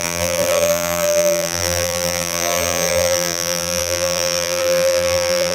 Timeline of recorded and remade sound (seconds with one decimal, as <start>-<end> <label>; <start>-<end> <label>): 0.0-5.5 remade